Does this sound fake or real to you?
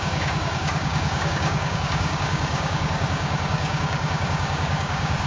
fake